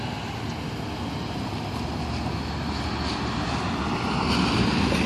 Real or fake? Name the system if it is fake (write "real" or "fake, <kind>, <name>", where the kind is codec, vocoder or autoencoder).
real